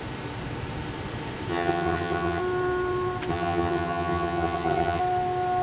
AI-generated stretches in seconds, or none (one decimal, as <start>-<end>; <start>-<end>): 1.5-2.4; 3.3-5.0